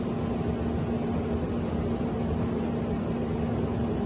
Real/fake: real